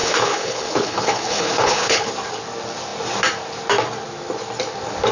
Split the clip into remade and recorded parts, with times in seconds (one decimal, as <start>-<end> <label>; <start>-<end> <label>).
0.0-2.1 remade; 2.1-5.1 recorded